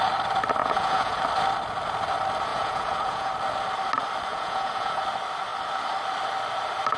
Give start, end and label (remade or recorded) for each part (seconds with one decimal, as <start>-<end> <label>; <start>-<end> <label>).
0.0-0.6 recorded; 0.6-1.2 remade; 1.2-2.5 recorded; 2.5-3.3 remade; 3.3-4.3 recorded; 4.3-5.0 remade; 5.0-7.0 recorded